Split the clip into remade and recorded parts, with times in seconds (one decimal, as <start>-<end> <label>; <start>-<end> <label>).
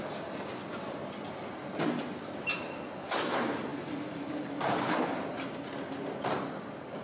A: 0.0-7.0 recorded